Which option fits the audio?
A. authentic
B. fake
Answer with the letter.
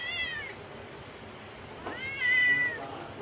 A